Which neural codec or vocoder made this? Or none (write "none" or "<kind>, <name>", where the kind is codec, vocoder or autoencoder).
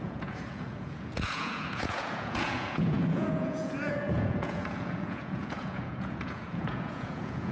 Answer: vocoder, Vocos